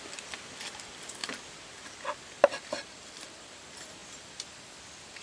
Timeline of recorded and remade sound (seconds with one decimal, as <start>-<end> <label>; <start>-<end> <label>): 0.0-5.2 recorded

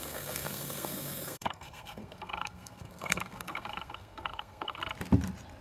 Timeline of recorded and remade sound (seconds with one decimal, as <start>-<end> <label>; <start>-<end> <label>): 0.0-4.8 remade; 4.8-5.6 recorded

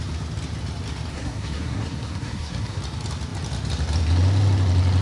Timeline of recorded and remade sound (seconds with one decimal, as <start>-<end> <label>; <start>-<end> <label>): 0.0-1.1 recorded; 1.1-2.8 remade; 2.8-5.0 recorded

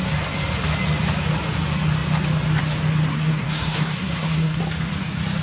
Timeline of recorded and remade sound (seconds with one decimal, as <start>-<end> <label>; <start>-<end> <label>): 0.0-3.1 recorded; 3.1-4.6 remade; 4.6-5.4 recorded

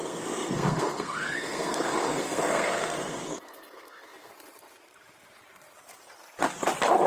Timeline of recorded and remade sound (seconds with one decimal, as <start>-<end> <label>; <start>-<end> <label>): 0.0-4.3 remade; 4.3-7.1 recorded

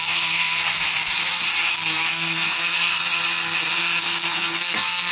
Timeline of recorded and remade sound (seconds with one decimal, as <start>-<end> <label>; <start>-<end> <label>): 0.0-0.9 remade; 0.9-1.7 recorded; 1.7-3.0 remade; 3.0-3.8 recorded; 3.8-5.1 remade